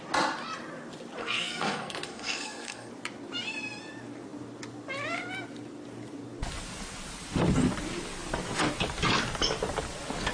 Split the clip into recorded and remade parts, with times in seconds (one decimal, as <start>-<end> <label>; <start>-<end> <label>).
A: 0.0-1.2 recorded; 1.2-2.9 remade; 2.9-10.3 recorded